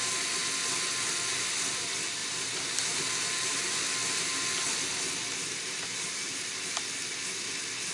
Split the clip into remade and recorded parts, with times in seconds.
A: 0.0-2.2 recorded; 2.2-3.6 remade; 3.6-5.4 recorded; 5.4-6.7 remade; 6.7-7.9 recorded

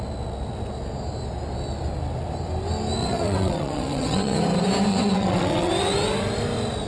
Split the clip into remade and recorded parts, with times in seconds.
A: 0.0-3.0 recorded; 3.0-4.4 remade; 4.4-4.9 recorded; 4.9-5.7 remade; 5.7-6.9 recorded